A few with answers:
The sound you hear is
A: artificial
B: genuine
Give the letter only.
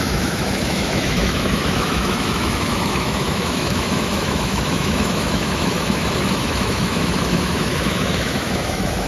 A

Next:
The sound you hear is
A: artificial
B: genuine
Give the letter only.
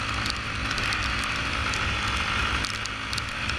B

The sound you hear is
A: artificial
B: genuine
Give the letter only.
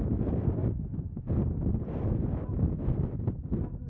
B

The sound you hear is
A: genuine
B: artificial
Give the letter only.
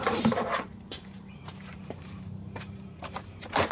B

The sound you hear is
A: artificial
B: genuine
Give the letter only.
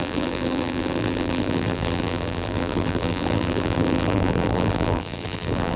A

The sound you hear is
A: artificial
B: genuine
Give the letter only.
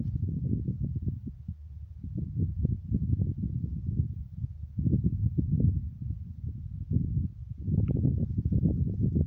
B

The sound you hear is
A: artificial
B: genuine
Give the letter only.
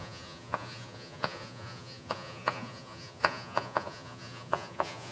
A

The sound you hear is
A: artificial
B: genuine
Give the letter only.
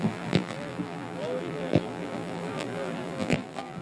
A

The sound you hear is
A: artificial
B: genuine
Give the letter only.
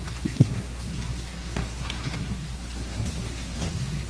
A